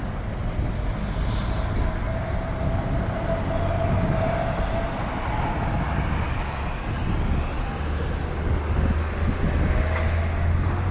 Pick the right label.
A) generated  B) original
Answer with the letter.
B